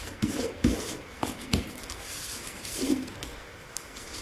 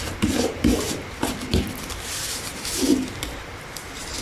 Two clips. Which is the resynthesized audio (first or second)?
first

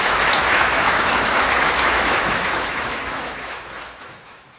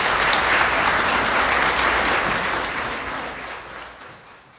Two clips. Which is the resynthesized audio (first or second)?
first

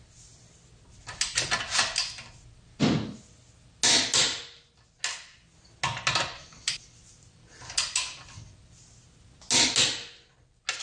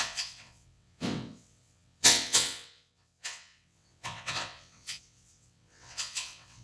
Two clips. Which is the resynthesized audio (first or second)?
second